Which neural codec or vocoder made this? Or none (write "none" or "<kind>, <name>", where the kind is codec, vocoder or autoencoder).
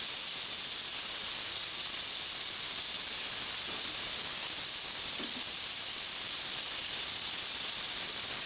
none